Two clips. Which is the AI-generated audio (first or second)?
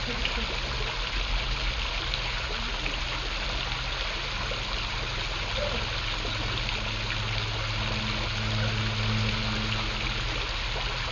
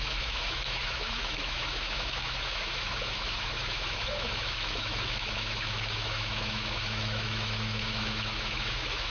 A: second